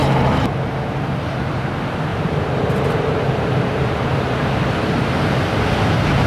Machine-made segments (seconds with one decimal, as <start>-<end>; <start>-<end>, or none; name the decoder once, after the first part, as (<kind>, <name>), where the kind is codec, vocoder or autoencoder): 0.0-0.5 (vocoder, BigVGAN v2); 2.1-5.3